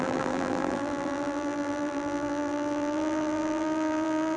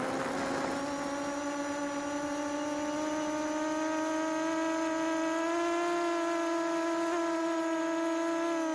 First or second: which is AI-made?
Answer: first